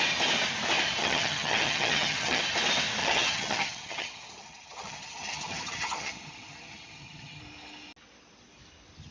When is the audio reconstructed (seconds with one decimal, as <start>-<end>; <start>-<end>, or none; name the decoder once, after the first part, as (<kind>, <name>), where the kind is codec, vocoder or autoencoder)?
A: 1.0-2.4 (vocoder, HiFi-GAN); 3.0-7.4